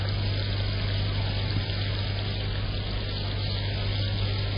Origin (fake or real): real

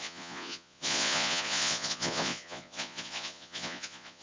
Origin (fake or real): fake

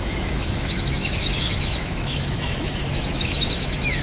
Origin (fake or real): fake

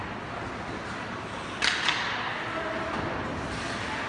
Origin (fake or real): real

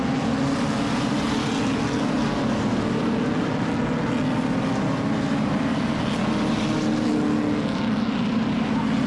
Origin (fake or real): real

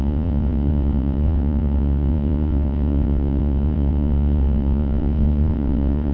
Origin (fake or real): fake